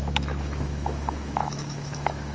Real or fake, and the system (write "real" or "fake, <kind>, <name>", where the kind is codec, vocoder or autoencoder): fake, autoencoder, DAC-VAE